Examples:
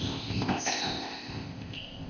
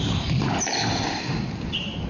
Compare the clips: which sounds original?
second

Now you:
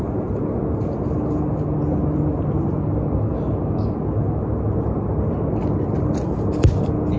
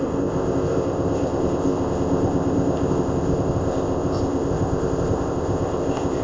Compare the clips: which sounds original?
first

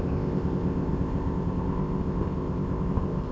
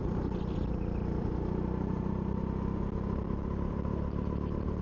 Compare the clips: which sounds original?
second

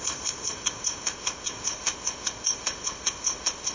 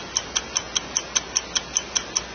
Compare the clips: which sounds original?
second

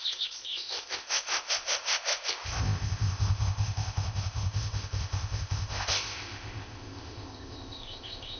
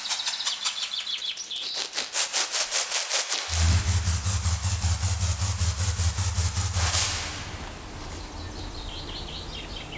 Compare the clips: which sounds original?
second